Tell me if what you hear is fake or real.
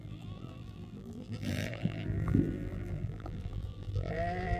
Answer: fake